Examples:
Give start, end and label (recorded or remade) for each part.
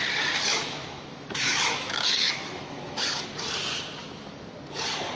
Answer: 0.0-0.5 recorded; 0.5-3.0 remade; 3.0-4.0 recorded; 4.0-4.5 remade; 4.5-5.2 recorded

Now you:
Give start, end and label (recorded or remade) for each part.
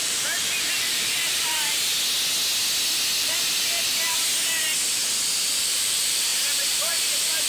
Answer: 0.0-1.9 remade; 1.9-3.2 recorded; 3.2-4.2 remade; 4.2-4.9 recorded; 4.9-7.5 remade